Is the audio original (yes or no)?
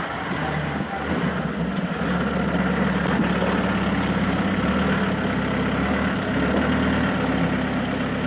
yes